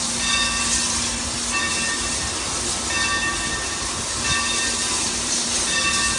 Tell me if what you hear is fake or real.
real